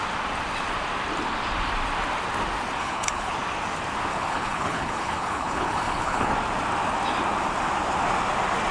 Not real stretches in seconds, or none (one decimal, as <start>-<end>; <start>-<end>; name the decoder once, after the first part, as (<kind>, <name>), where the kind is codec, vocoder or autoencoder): 2.8-3.3 (codec, HILCodec); 4.1-6.3